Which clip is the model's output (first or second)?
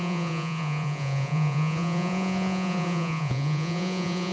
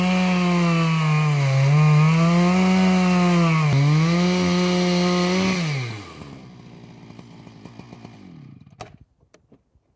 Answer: first